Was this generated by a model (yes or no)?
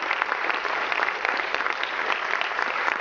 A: yes